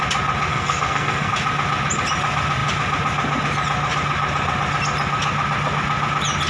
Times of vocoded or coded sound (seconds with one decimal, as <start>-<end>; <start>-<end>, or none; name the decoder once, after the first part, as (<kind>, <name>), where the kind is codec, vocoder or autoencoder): 0.5-1.3 (codec, SNAC)